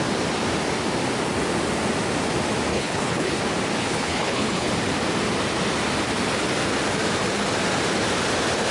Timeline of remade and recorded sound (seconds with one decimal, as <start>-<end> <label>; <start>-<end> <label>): 0.0-2.7 recorded; 2.7-3.4 remade; 3.4-3.8 recorded; 3.8-4.7 remade; 4.7-8.7 recorded